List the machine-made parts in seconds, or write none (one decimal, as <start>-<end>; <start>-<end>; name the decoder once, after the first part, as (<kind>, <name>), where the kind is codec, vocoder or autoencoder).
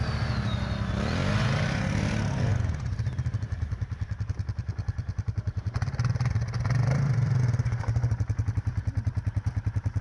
2.5-7.4 (vocoder, BigVGAN v2)